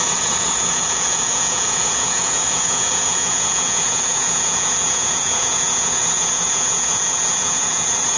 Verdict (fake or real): fake